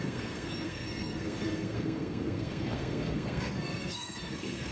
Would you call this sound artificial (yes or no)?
yes